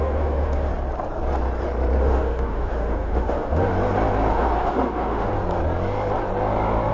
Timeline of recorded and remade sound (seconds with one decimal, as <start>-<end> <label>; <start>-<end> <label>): 0.0-0.7 remade; 0.7-2.0 recorded; 2.0-3.7 remade; 3.7-4.3 recorded; 4.3-5.3 remade; 5.3-6.9 recorded